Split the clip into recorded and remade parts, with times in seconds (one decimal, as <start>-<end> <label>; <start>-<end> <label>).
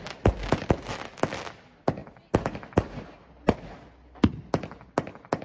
0.0-5.4 recorded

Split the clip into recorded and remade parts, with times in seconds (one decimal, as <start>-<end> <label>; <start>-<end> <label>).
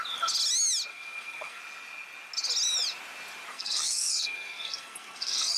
0.0-0.9 recorded; 0.9-1.6 remade; 1.6-3.5 recorded; 3.5-5.6 remade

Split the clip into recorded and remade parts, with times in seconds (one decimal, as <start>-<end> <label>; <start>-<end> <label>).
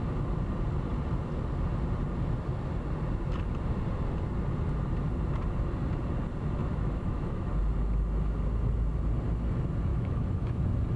0.0-6.6 recorded; 6.6-7.5 remade; 7.5-9.9 recorded; 9.9-10.6 remade; 10.6-11.0 recorded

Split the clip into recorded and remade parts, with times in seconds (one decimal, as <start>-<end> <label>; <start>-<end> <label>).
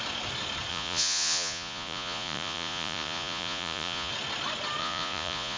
0.0-0.7 recorded; 0.7-4.1 remade; 4.1-4.8 recorded; 4.8-5.6 remade